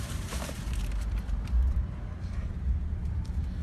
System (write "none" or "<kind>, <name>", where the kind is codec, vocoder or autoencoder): vocoder, BigVGAN v2